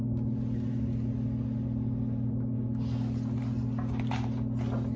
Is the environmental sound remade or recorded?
recorded